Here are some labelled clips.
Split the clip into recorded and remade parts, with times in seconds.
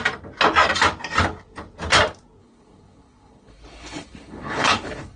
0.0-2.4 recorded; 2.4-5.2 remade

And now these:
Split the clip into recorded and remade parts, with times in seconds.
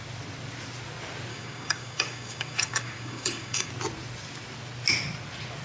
0.0-1.3 recorded; 1.3-3.7 remade; 3.7-5.6 recorded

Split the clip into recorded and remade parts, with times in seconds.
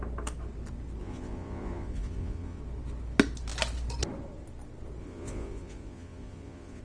0.0-1.0 recorded; 1.0-2.6 remade; 2.6-5.0 recorded; 5.0-6.8 remade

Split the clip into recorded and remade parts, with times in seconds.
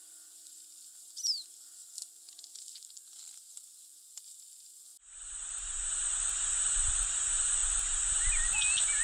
0.0-9.0 recorded